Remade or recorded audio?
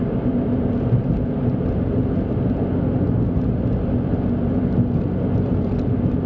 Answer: recorded